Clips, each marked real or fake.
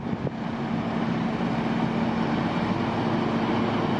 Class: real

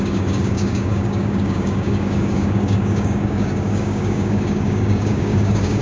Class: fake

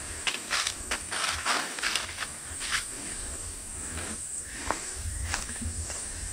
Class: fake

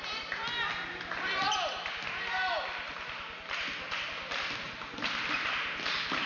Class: real